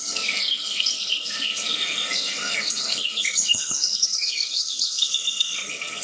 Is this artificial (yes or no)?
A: yes